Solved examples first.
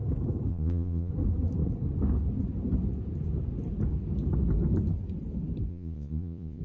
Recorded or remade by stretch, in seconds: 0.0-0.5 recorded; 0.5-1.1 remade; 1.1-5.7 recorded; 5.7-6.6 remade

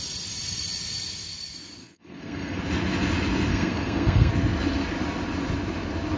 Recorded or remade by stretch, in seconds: 0.0-1.8 recorded; 1.8-2.6 remade; 2.6-3.5 recorded; 3.5-4.3 remade; 4.3-6.2 recorded

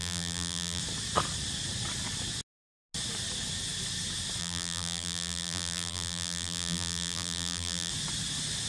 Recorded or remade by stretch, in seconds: 0.0-0.8 remade; 0.8-4.4 recorded; 4.4-7.9 remade; 7.9-8.7 recorded

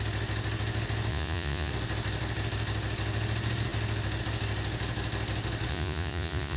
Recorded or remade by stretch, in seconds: 0.0-1.1 recorded; 1.1-1.7 remade; 1.7-5.7 recorded; 5.7-6.6 remade

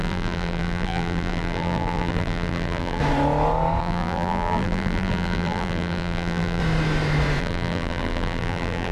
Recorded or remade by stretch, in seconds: 0.0-3.0 remade; 3.0-3.8 recorded; 3.8-6.6 remade; 6.6-7.4 recorded; 7.4-8.9 remade

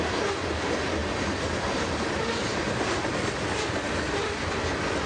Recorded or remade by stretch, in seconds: 0.0-5.1 recorded

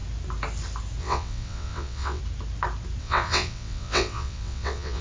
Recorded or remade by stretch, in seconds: 0.0-1.0 recorded; 1.0-2.2 remade; 2.2-3.0 recorded; 3.0-5.0 remade